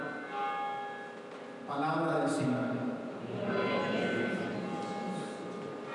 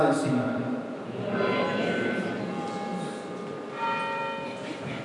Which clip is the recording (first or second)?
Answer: first